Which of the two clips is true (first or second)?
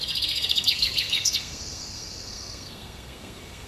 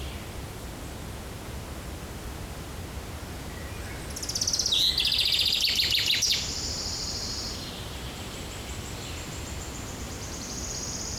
second